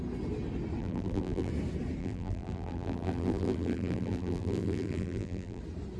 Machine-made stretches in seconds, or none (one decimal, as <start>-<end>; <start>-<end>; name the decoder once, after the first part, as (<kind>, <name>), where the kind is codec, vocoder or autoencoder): 0.8-1.5 (vocoder, BigVGAN v2); 2.0-5.6